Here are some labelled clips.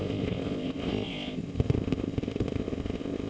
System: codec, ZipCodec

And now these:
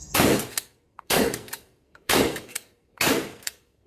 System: codec, SNAC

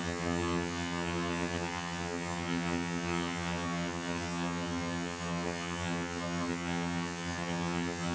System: vocoder, HiFi-GAN